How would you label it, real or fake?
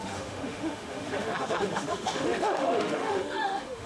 fake